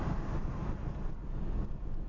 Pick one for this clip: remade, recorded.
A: recorded